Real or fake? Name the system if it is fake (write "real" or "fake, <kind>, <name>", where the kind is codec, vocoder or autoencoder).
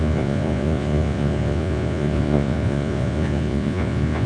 fake, vocoder, Vocos